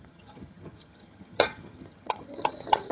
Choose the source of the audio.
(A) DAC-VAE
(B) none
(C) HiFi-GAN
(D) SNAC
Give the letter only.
C